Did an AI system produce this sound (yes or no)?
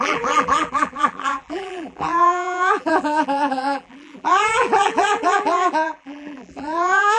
yes